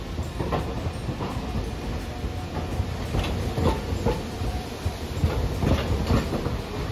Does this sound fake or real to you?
real